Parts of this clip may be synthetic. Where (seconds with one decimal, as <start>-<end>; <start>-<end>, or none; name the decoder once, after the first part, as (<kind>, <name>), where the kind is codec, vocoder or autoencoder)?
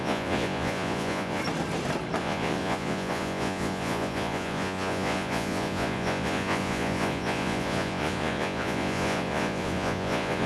0.0-1.4 (vocoder, Vocos); 2.2-10.5